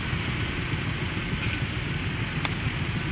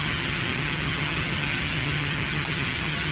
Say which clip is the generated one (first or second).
second